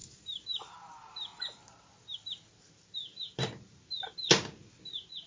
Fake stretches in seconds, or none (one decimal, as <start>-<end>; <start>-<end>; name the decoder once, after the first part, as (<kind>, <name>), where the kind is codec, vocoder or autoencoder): none